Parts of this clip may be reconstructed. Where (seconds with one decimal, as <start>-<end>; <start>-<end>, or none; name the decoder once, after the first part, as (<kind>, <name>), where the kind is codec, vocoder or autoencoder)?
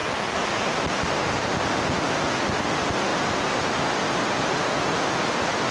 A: none